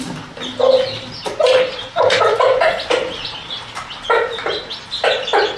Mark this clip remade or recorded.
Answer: recorded